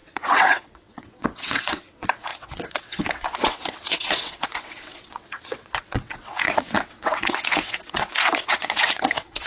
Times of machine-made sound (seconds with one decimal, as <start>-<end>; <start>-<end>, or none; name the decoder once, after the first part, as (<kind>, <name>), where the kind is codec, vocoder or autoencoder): 0.0-9.5 (vocoder, WaveNeXt)